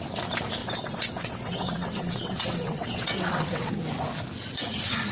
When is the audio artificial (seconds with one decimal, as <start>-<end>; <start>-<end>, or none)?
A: 0.6-3.7